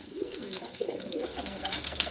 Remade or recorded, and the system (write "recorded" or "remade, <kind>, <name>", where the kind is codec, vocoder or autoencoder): remade, codec, SNAC